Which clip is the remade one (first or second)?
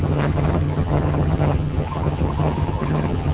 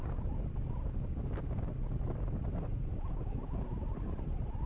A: first